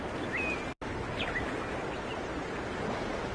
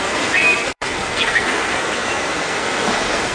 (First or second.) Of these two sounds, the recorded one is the first